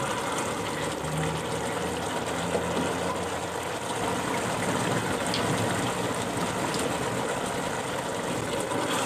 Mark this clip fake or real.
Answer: real